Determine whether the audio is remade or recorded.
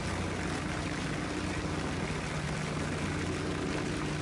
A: recorded